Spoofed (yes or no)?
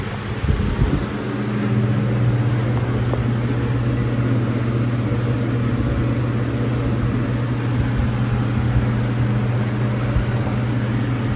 no